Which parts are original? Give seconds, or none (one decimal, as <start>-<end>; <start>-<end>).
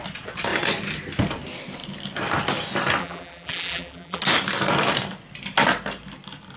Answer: 0.0-3.0; 4.2-6.6